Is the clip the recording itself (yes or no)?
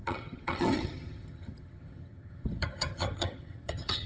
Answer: no